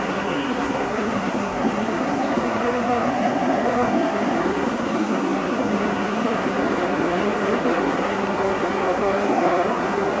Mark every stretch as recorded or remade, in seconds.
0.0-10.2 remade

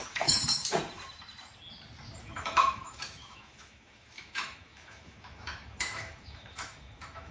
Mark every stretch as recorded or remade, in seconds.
0.0-0.4 remade; 0.4-2.2 recorded; 2.2-7.3 remade

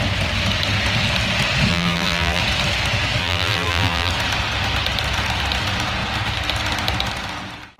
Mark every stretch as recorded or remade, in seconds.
0.0-1.7 recorded; 1.7-2.4 remade; 2.4-3.2 recorded; 3.2-4.1 remade; 4.1-7.8 recorded

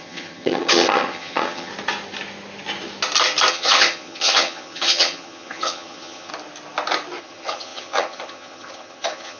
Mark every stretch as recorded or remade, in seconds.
0.0-1.7 remade; 1.7-3.5 recorded; 3.5-6.3 remade; 6.3-7.2 recorded; 7.2-9.4 remade